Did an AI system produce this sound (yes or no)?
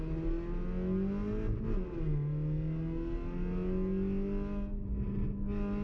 no